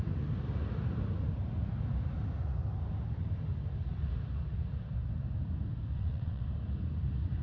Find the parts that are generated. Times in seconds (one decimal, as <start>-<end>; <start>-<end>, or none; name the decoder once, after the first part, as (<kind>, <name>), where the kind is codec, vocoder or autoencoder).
5.9-6.4 (vocoder, WaveNeXt)